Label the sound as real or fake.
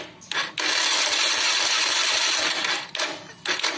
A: real